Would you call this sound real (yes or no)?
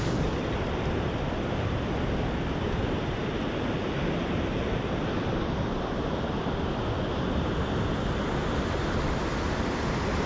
yes